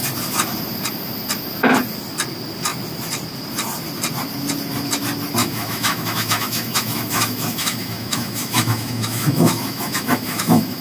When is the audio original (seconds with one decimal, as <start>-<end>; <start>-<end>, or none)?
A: 0.0-5.4

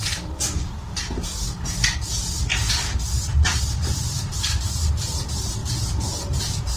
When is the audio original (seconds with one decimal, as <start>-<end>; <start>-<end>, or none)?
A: 1.3-3.6

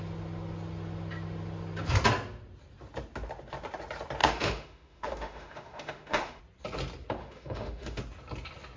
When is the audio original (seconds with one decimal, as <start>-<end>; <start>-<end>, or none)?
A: 0.0-4.2; 6.4-7.2; 8.0-8.8

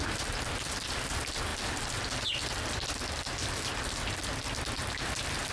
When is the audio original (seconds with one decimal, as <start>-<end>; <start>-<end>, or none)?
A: 0.0-5.5

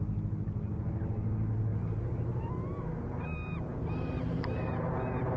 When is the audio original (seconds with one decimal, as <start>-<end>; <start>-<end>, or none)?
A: 0.0-1.7; 4.9-5.4

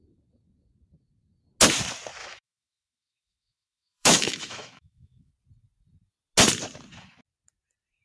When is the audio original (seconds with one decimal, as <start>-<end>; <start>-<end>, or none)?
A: 0.0-2.2; 5.3-8.0

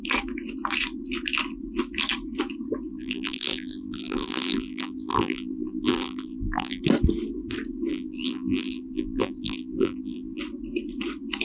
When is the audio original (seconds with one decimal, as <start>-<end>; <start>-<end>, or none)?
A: 0.0-2.9; 6.8-7.9; 10.4-11.4